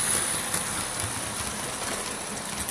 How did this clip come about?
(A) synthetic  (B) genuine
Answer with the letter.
B